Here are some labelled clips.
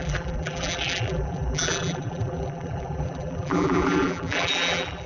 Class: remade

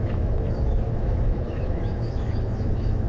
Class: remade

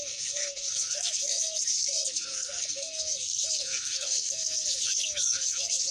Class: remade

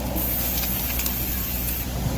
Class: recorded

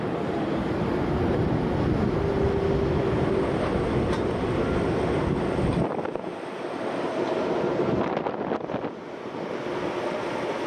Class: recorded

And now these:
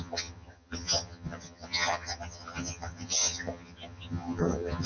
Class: remade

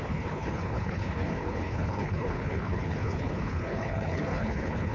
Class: remade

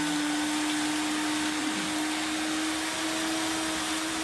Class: recorded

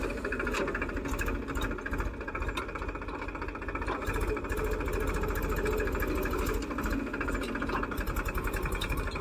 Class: recorded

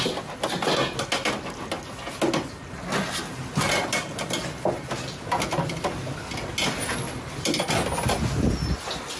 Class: recorded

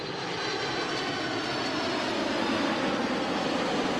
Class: recorded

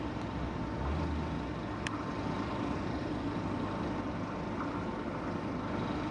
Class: recorded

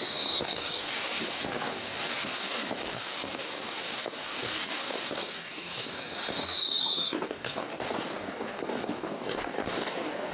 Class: remade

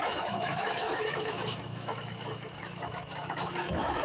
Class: remade